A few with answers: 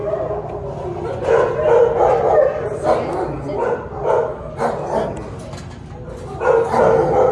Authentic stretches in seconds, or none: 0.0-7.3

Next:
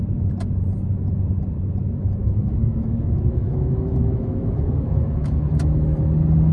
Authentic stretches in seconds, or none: 0.0-2.2; 5.5-6.5

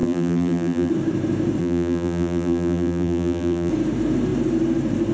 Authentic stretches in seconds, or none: 0.9-1.6; 3.7-5.1